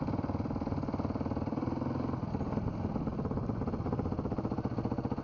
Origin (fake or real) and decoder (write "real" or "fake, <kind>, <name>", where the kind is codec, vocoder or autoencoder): real